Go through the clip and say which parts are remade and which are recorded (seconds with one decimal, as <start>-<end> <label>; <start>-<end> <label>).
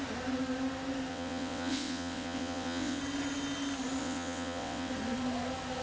0.0-1.1 recorded; 1.1-3.0 remade; 3.0-4.0 recorded; 4.0-4.9 remade; 4.9-5.8 recorded